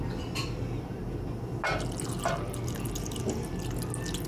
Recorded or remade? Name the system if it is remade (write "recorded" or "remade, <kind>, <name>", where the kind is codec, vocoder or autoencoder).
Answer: recorded